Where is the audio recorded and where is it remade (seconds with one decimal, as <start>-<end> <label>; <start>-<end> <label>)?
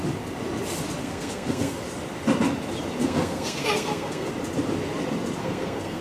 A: 0.0-1.0 recorded; 1.0-1.8 remade; 1.8-3.0 recorded; 3.0-4.3 remade; 4.3-5.4 recorded; 5.4-6.0 remade